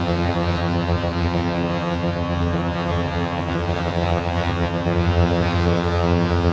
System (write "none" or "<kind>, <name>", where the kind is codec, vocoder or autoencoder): vocoder, HiFi-GAN